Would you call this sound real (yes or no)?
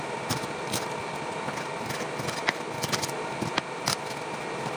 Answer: yes